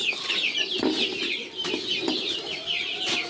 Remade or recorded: recorded